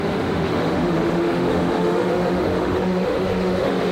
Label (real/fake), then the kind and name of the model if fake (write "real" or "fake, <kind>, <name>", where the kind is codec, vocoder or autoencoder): fake, autoencoder, DAC-VAE